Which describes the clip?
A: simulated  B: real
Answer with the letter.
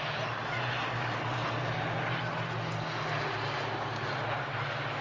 B